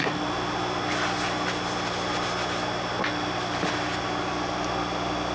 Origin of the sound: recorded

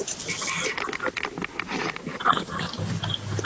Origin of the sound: recorded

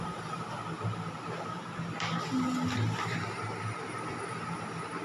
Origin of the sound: recorded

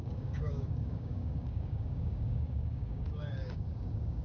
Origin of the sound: remade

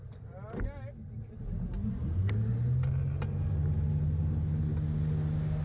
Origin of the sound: recorded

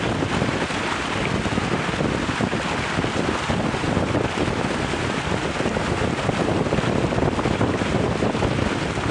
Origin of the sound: recorded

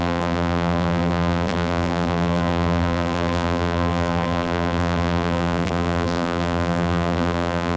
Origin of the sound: remade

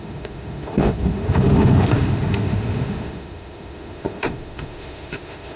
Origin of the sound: remade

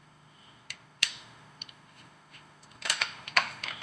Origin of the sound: remade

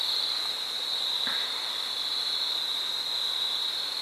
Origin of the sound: recorded